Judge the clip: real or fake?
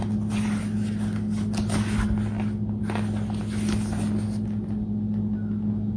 real